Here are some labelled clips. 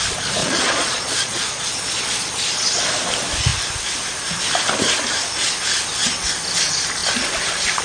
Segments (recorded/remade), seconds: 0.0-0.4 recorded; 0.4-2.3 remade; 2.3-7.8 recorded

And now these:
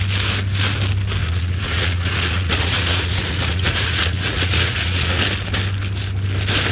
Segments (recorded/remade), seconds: 0.0-1.2 recorded; 1.2-5.2 remade; 5.2-6.7 recorded

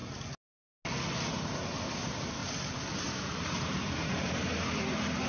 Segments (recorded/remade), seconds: 0.0-1.3 recorded; 1.3-2.4 remade; 2.4-3.0 recorded; 3.0-5.3 remade

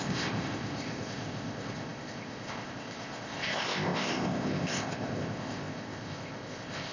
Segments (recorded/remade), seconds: 0.0-6.9 remade

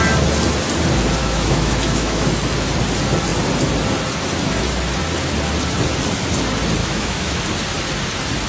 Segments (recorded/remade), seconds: 0.0-1.2 recorded; 1.2-2.3 remade; 2.3-6.8 recorded; 6.8-7.4 remade; 7.4-8.5 recorded

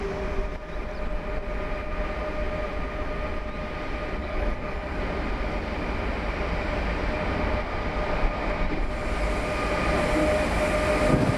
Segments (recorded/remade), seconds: 0.0-4.2 recorded; 4.2-5.0 remade; 5.0-11.4 recorded

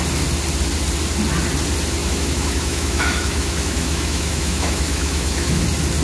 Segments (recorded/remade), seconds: 0.0-2.0 recorded; 2.0-5.6 remade; 5.6-6.0 recorded

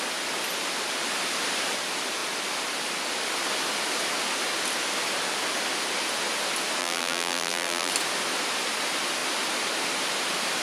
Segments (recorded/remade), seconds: 0.0-6.8 recorded; 6.8-7.9 remade; 7.9-10.6 recorded